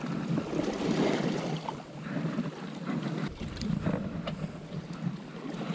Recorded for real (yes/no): yes